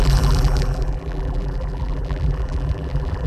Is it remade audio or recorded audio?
remade